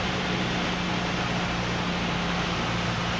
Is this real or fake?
real